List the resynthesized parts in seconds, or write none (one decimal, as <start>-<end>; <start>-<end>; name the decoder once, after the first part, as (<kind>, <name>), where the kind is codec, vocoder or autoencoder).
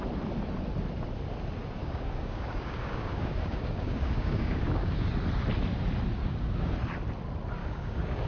1.8-5.1 (codec, DAC); 6.2-6.7; 7.6-8.3